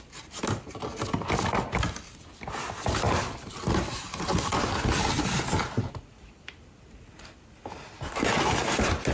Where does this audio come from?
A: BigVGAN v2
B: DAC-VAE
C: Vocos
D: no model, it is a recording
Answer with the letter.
D